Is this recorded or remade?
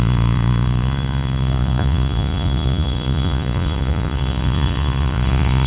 remade